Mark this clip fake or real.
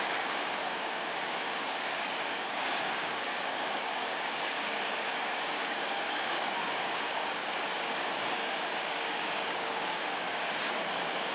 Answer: fake